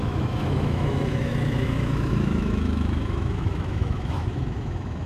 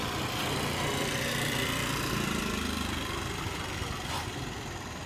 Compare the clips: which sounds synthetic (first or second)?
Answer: first